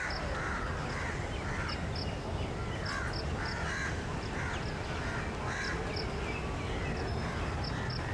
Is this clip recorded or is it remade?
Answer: recorded